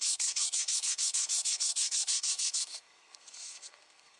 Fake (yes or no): yes